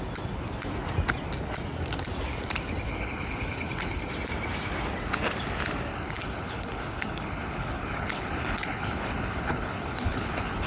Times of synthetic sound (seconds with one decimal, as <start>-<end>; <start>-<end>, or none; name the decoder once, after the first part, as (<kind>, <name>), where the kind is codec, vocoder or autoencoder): 2.9-4.1 (codec, HILCodec); 5.9-10.7